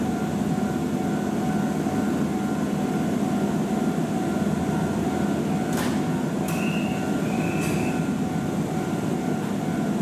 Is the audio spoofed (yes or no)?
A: no